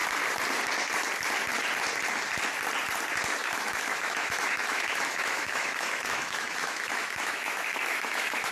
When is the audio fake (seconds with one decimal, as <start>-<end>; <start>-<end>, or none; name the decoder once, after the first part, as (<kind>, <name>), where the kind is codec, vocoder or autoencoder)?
3.4-8.5 (autoencoder, DAC-VAE)